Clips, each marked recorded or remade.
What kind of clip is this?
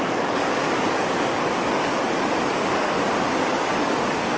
remade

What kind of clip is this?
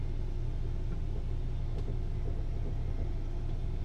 recorded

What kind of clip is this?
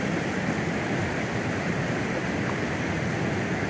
recorded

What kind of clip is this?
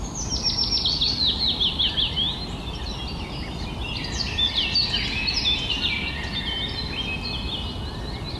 recorded